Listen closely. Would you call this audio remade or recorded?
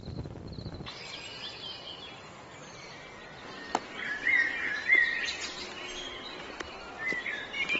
recorded